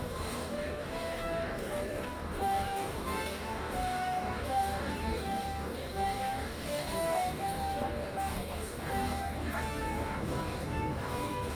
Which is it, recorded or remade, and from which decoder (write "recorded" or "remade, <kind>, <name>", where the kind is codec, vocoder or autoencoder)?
remade, codec, DAC